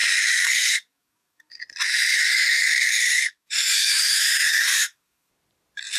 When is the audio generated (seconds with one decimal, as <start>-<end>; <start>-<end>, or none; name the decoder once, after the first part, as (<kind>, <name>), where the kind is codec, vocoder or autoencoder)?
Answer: 0.0-1.5 (codec, DAC); 2.1-5.3